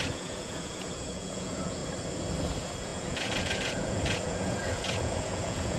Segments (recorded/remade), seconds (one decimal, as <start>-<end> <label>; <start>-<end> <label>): 0.0-1.8 remade; 1.8-2.4 recorded; 2.4-5.8 remade